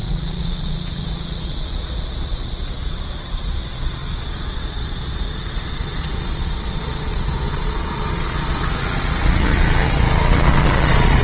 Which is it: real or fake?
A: fake